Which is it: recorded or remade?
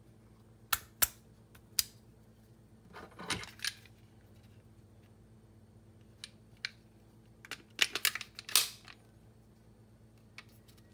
recorded